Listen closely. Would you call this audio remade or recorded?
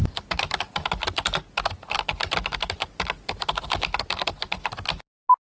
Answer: recorded